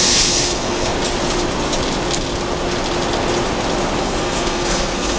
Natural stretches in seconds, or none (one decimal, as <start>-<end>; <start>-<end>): 0.9-4.0